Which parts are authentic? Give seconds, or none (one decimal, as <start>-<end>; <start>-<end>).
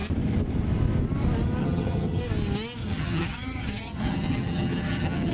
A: 0.0-1.6; 2.2-2.8